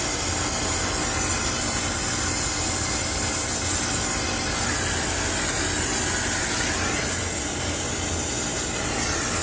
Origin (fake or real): real